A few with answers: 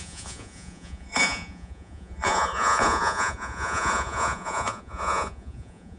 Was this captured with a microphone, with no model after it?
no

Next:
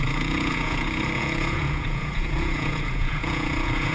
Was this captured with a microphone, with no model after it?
no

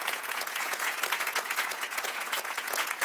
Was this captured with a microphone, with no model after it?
no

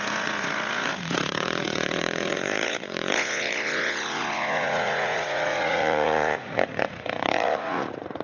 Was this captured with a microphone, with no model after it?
no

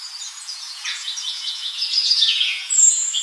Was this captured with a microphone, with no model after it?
no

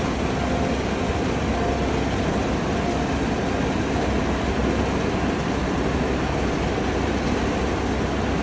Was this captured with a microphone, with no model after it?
yes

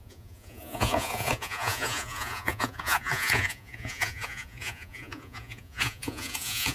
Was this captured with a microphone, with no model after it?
no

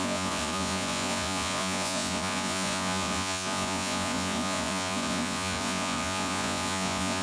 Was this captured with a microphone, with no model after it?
no